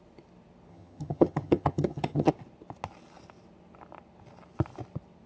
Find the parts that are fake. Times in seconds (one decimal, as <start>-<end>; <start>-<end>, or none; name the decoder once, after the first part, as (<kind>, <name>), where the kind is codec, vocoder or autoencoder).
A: 0.7-2.3 (vocoder, HiFi-GAN)